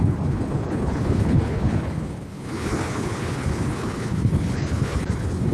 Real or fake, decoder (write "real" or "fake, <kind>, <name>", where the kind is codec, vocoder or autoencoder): fake, codec, HILCodec